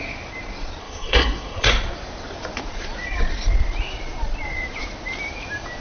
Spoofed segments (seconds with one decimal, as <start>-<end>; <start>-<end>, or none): 0.8-1.7